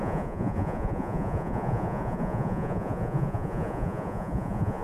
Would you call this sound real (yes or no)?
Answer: no